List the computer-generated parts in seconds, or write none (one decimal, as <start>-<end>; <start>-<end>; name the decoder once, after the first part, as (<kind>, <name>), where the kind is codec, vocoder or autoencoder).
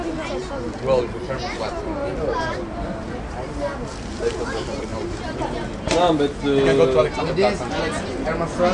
none